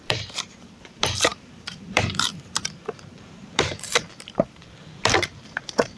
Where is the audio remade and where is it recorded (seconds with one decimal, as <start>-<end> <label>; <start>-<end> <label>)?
0.0-6.0 remade